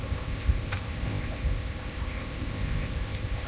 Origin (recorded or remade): remade